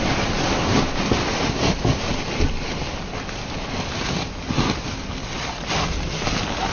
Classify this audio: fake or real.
real